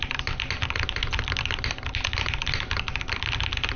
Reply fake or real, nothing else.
real